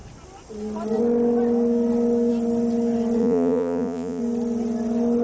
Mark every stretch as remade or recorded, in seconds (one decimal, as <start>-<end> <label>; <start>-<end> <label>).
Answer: 0.0-3.2 recorded; 3.2-4.2 remade; 4.2-5.2 recorded